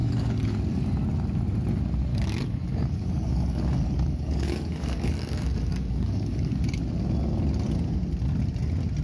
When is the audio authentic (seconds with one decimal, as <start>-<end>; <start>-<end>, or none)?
0.6-2.1; 6.8-9.0